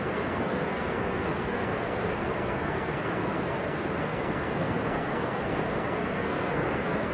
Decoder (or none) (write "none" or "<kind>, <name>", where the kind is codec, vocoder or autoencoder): codec, SNAC